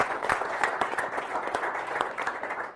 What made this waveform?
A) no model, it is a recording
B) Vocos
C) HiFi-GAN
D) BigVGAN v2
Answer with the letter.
B